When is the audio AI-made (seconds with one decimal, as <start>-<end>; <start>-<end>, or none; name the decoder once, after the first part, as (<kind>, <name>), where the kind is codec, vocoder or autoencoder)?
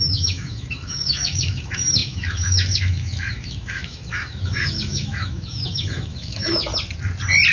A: 0.0-6.7 (autoencoder, DAC-VAE)